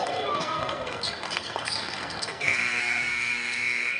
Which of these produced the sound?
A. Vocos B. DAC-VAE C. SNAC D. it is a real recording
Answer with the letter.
C